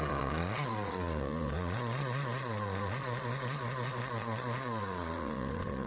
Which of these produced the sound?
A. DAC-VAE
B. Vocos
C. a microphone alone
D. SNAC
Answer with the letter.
B